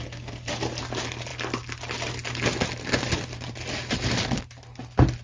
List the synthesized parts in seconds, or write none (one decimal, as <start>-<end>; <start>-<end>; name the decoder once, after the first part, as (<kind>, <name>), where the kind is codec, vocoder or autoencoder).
none